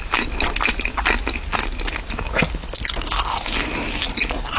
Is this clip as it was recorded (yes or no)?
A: yes